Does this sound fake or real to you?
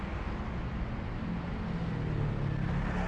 real